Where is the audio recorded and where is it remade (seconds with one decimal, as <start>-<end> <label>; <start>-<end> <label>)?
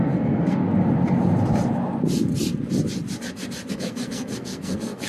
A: 0.0-0.6 remade; 0.6-3.7 recorded; 3.7-5.1 remade